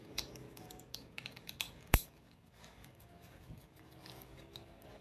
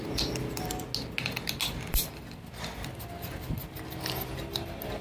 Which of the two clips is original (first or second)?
second